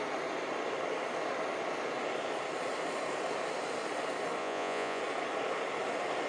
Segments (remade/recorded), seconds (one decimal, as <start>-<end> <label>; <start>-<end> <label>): 0.0-4.4 recorded; 4.4-5.0 remade; 5.0-6.3 recorded